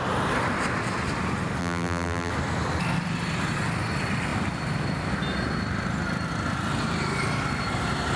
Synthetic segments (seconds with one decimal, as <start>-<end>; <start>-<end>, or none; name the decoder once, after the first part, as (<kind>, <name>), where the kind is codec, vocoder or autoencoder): 1.6-2.3 (vocoder, BigVGAN v2)